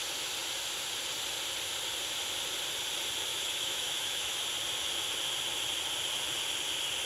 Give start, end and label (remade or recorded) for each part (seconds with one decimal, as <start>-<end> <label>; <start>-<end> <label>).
0.0-3.3 recorded; 3.3-4.4 remade; 4.4-7.1 recorded